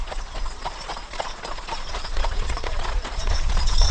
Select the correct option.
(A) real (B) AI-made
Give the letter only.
B